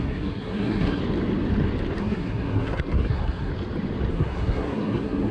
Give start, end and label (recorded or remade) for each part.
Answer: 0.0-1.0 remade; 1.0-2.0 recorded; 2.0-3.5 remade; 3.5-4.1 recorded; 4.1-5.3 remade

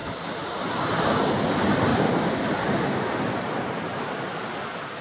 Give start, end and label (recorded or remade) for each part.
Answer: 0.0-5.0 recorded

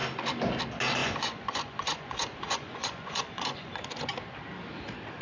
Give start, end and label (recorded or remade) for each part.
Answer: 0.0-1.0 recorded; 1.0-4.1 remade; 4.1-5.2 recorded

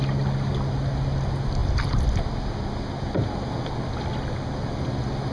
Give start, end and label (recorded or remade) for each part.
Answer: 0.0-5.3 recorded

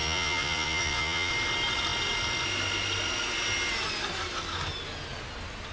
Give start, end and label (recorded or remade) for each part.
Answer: 0.0-1.3 remade; 1.3-5.7 recorded

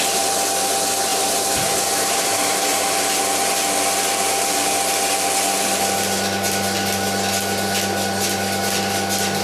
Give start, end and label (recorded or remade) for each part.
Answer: 0.0-1.1 recorded; 1.1-3.2 remade; 3.2-9.4 recorded

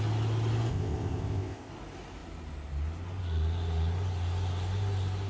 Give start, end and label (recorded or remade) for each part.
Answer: 0.0-0.7 recorded; 0.7-1.7 remade; 1.7-5.3 recorded